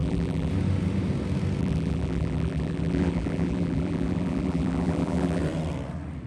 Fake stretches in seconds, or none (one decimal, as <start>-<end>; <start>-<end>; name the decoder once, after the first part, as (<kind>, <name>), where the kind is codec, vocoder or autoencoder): 0.0-0.5 (vocoder, BigVGAN v2); 1.6-5.4